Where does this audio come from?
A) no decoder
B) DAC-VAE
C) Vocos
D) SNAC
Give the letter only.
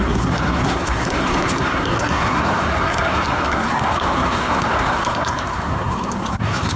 D